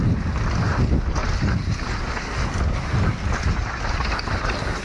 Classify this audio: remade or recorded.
recorded